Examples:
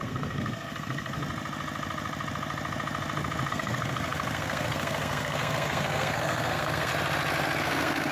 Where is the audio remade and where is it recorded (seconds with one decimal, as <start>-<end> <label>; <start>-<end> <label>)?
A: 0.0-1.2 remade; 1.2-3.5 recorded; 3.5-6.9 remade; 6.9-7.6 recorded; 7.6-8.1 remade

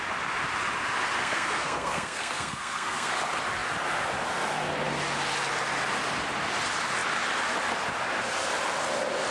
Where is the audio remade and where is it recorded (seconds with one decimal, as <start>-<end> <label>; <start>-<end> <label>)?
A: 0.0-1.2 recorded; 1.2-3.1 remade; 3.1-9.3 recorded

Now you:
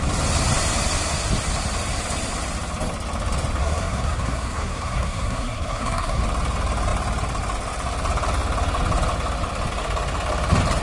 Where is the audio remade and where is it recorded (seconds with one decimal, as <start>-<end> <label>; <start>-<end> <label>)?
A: 0.0-3.6 recorded; 3.6-6.2 remade; 6.2-10.8 recorded